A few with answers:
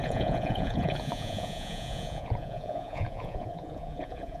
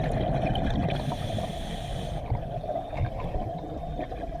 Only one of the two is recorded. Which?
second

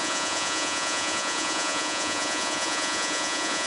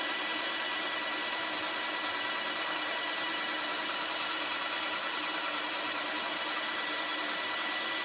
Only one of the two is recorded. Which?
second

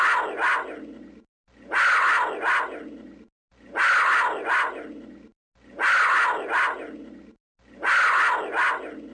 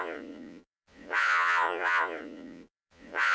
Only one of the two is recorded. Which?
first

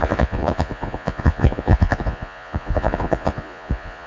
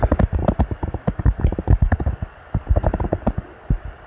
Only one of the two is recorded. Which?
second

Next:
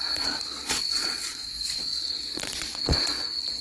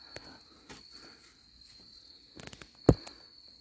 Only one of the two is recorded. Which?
second